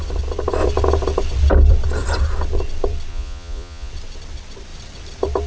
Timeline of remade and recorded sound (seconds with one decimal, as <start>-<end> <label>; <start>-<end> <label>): 0.0-3.1 recorded; 3.1-3.9 remade; 3.9-5.5 recorded